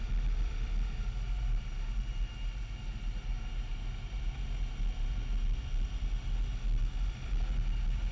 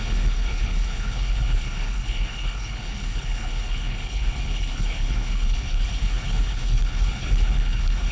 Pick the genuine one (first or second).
first